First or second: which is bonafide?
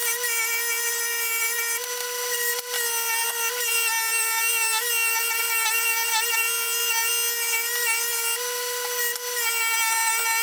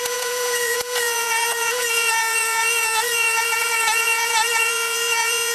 first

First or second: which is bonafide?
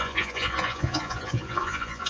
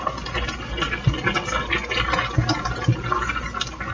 second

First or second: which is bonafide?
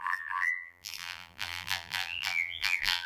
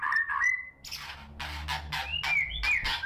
second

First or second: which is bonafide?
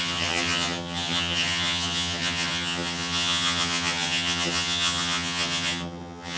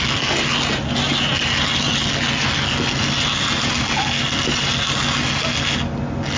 second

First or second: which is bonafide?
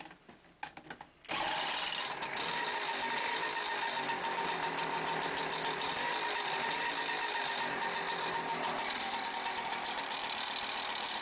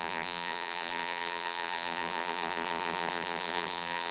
first